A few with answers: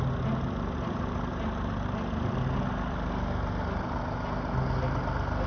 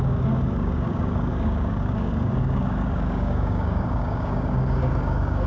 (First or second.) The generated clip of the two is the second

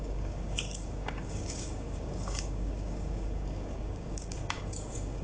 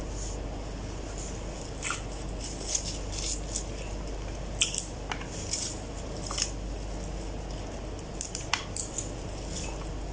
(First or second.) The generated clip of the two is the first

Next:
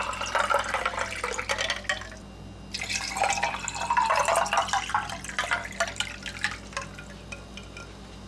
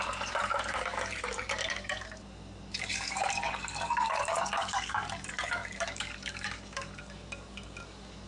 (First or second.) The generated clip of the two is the second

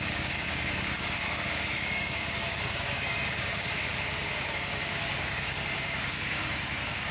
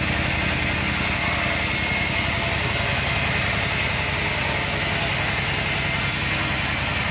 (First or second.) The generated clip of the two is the first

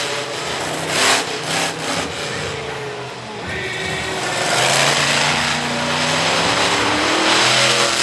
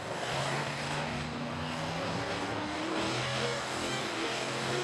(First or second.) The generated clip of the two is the second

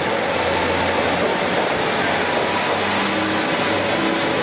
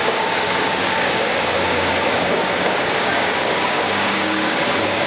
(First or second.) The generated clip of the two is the second